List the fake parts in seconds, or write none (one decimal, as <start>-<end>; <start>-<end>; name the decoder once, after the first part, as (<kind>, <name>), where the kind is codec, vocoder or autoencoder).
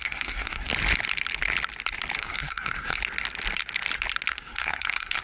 0.0-0.7 (codec, SNAC); 2.2-3.0; 4.3-5.2